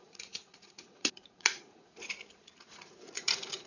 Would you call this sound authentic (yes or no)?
no